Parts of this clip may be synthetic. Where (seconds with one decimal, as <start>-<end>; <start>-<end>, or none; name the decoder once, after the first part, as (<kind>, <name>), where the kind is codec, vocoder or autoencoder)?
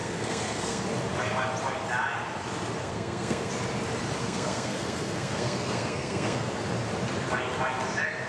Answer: 0.0-0.8 (codec, SNAC); 2.8-3.5; 4.2-6.5